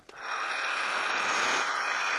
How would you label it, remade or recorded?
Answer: recorded